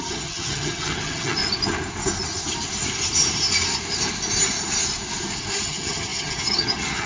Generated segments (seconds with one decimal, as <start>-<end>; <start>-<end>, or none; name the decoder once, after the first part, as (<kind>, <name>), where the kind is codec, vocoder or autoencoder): 0.0-1.4 (vocoder, HiFi-GAN); 5.6-7.1